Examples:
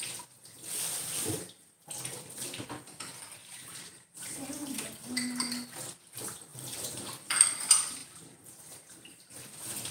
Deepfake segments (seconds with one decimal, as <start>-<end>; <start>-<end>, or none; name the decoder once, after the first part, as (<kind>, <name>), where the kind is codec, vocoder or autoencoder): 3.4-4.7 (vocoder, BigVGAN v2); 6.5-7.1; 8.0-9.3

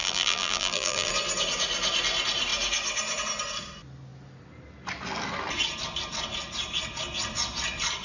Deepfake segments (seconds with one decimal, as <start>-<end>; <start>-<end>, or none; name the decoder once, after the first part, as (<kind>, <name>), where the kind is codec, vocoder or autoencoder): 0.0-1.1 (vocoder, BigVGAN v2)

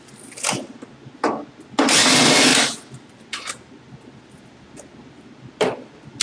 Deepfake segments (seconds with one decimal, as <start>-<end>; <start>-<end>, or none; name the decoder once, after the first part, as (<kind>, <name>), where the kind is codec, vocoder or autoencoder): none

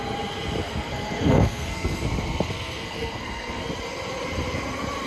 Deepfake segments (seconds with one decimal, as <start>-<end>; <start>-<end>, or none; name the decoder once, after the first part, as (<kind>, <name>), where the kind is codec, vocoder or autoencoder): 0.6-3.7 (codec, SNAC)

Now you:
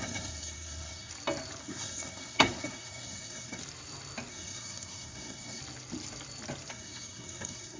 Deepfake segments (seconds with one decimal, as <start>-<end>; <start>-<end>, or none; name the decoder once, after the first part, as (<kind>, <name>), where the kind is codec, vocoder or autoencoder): 0.0-1.1 (codec, SNAC); 1.6-3.6; 4.3-5.6; 6.7-7.8